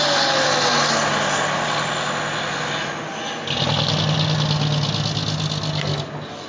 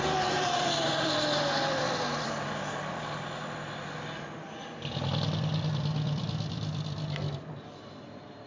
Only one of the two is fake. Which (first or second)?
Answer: second